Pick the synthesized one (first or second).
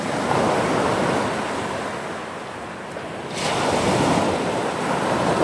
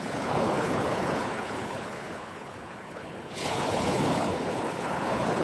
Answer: second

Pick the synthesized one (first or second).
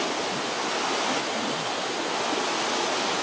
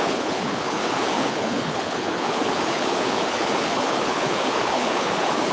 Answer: second